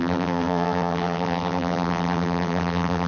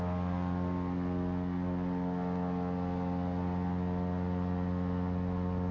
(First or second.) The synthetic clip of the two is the first